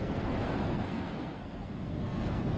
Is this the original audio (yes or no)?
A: no